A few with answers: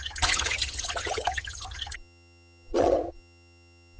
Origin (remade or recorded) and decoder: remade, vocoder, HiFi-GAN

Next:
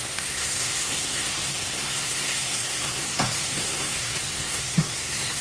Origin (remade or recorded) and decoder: remade, codec, SNAC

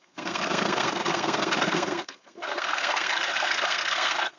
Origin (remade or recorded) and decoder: remade, codec, SNAC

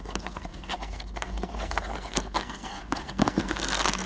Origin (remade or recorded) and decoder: remade, codec, SNAC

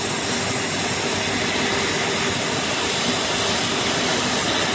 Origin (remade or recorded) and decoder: recorded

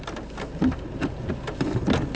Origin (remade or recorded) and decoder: recorded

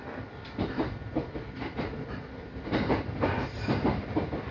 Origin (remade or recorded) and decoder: remade, vocoder, BigVGAN v2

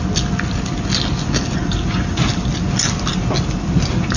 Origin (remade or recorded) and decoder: recorded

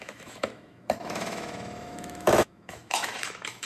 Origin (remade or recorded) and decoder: remade, autoencoder, DAC-VAE